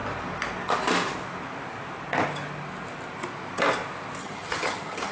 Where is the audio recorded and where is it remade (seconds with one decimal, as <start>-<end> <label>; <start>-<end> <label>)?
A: 0.0-4.2 recorded; 4.2-5.1 remade